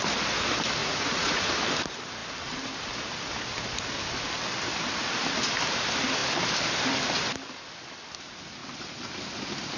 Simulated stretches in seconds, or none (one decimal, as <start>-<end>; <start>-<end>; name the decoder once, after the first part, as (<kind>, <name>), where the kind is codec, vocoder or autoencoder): 0.8-1.5 (vocoder, Vocos)